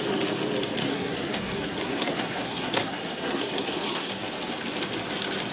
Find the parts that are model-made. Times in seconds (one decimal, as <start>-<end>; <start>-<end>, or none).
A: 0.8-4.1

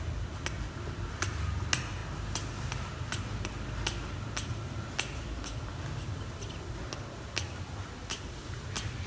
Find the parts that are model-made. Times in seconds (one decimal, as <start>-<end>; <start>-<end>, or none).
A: none

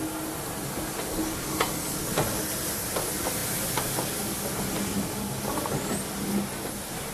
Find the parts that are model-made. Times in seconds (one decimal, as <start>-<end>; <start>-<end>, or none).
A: none

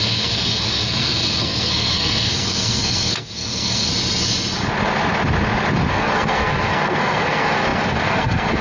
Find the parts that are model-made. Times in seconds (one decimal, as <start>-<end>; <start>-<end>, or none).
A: 0.0-3.9; 5.9-8.6